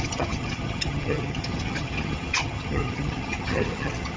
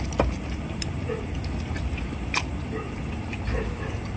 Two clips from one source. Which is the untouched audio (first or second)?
second